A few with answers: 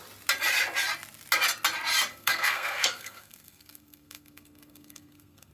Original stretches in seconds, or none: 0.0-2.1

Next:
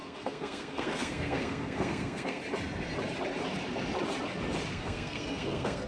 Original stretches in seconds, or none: 2.4-4.7

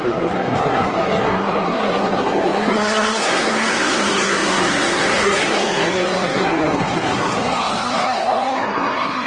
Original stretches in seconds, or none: none

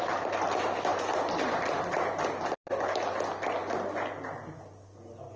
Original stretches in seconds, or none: 0.0-5.4

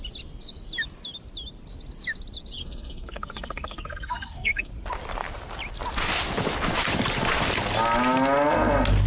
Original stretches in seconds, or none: 0.0-2.6; 4.7-9.1

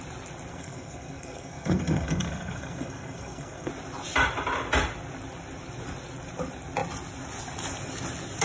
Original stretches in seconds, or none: 0.0-0.5; 3.7-8.4

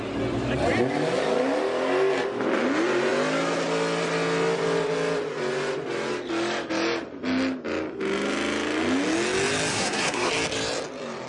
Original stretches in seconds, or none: 0.0-9.7; 10.3-11.3